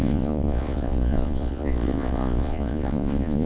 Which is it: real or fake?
fake